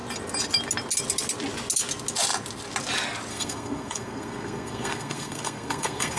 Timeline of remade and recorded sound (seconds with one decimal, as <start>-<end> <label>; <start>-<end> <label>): 0.0-3.3 recorded; 3.3-6.2 remade